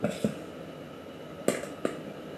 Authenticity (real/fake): real